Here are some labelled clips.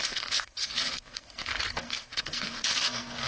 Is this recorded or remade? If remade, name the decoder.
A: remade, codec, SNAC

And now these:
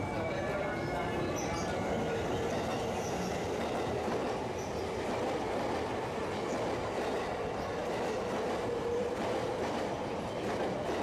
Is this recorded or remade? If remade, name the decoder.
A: recorded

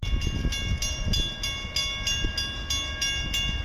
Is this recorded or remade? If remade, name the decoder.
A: recorded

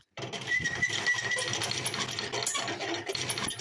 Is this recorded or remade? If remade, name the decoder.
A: recorded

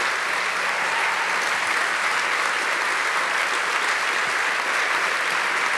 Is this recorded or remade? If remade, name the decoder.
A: recorded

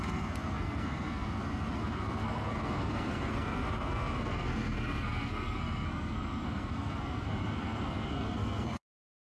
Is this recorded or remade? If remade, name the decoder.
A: remade, codec, SNAC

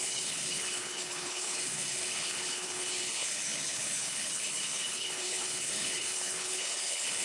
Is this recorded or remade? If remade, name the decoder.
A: remade, codec, HILCodec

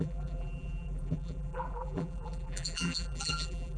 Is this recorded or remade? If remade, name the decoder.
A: remade, vocoder, BigVGAN v2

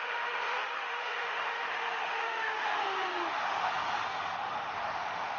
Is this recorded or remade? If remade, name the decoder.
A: remade, autoencoder, DAC-VAE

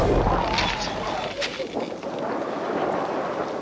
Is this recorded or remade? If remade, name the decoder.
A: recorded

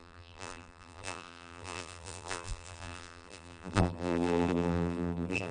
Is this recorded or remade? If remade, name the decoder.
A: remade, vocoder, BigVGAN v2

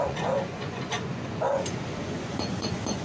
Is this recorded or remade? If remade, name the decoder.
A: remade, vocoder, Vocos